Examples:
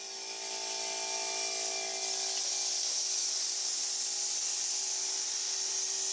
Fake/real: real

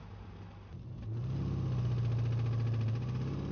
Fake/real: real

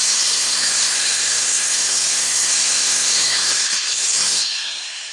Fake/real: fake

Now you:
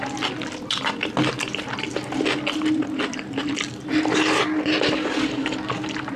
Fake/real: real